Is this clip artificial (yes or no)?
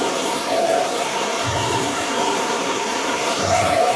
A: yes